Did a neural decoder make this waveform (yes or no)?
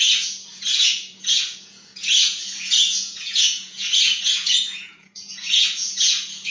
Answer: yes